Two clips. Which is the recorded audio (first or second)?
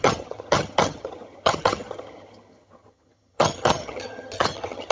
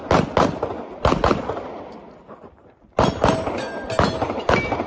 second